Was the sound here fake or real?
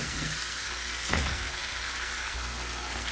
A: fake